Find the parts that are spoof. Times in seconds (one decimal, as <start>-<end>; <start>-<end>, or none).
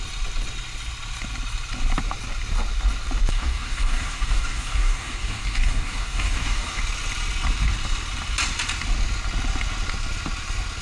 3.3-6.8